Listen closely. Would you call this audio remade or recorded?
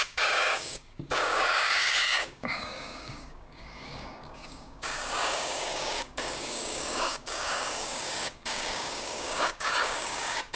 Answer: remade